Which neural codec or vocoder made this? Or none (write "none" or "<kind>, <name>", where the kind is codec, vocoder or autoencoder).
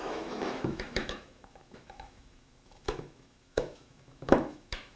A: autoencoder, DAC-VAE